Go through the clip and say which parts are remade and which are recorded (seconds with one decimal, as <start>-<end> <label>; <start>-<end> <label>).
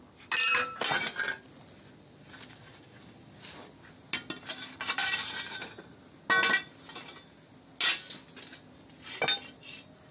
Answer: 0.0-10.1 recorded